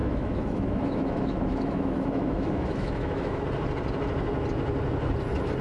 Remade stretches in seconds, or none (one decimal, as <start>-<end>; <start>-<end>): 0.0-3.4